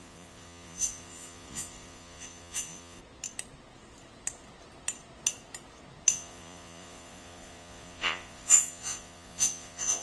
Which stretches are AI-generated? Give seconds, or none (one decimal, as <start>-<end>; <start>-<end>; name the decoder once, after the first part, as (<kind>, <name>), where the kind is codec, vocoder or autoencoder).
0.0-3.0 (vocoder, Vocos); 6.1-10.0